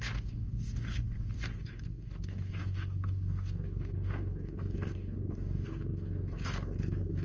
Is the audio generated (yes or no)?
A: yes